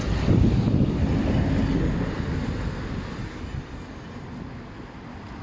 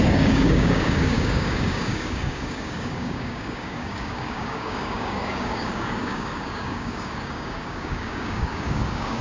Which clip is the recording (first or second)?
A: first